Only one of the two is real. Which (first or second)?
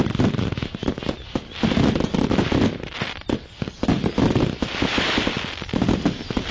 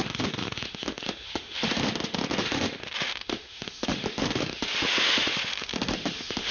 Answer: first